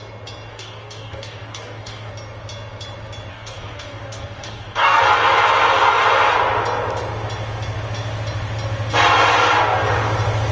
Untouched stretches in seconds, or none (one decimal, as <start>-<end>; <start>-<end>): 0.0-0.5; 2.1-3.3; 5.0-10.5